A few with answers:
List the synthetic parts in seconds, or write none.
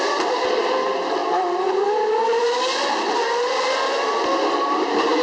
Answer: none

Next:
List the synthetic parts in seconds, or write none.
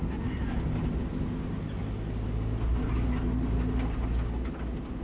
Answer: none